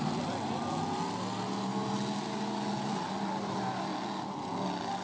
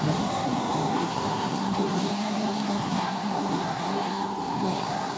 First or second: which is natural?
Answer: first